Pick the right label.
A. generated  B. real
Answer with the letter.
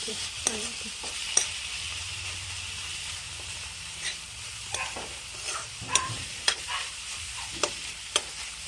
A